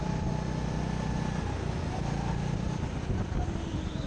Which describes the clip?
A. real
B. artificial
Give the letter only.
A